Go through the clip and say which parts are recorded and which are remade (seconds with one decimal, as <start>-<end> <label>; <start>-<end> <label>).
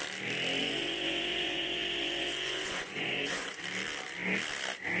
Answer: 0.0-0.6 recorded; 0.6-3.6 remade; 3.6-5.0 recorded